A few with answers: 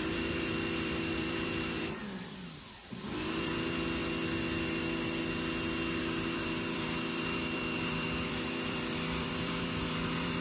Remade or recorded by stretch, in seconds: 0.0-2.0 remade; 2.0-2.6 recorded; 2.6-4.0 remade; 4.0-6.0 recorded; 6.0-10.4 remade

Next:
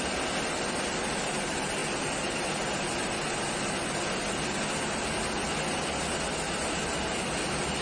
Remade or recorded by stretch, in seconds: 0.0-7.8 recorded

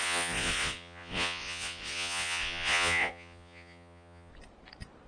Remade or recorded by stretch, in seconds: 0.0-4.3 remade; 4.3-5.1 recorded